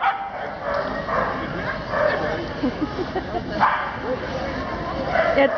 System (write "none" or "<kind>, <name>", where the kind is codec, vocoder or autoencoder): none